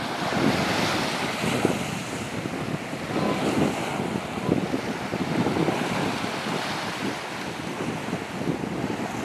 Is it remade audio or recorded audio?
recorded